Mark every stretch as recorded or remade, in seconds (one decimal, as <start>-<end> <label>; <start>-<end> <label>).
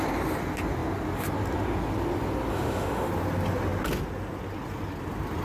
0.0-2.5 recorded; 2.5-3.1 remade; 3.1-5.4 recorded